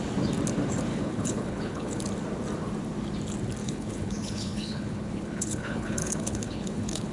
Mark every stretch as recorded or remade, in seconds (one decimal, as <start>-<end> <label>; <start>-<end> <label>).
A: 0.0-0.9 recorded; 0.9-2.0 remade; 2.0-3.6 recorded; 3.6-7.1 remade